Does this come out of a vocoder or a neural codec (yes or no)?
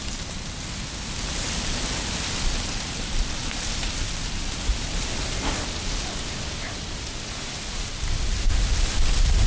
no